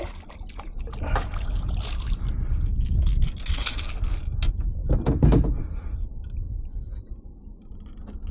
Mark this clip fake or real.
real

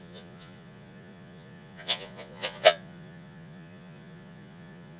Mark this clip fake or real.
fake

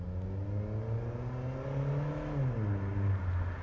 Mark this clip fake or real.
real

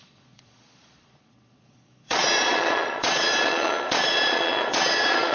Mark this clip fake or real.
fake